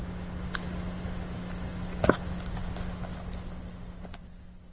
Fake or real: real